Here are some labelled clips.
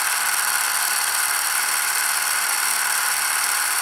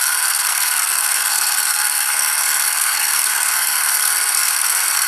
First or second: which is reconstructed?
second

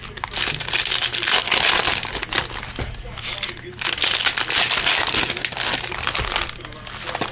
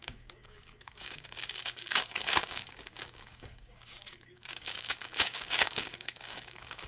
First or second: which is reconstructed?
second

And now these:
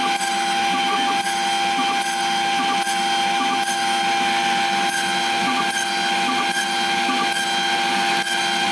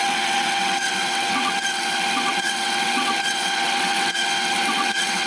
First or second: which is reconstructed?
second